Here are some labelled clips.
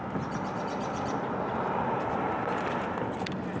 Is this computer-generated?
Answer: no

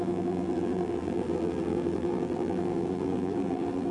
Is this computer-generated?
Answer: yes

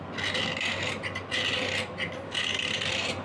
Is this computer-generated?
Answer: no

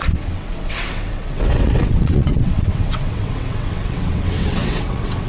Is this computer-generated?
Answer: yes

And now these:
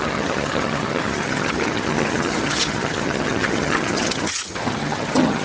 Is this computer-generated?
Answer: yes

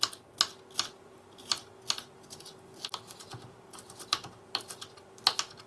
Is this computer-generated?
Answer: no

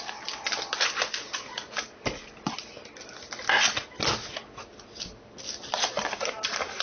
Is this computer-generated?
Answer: no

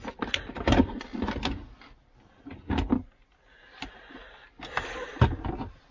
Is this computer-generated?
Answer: no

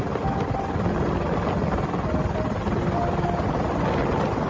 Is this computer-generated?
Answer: no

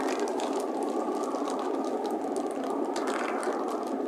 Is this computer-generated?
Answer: no